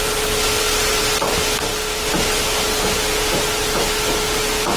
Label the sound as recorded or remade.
recorded